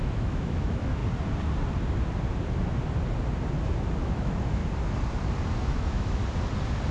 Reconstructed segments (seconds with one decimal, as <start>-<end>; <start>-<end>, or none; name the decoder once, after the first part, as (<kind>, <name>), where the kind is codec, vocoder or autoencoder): 0.0-1.0 (autoencoder, DAC-VAE); 4.0-4.6; 5.6-6.2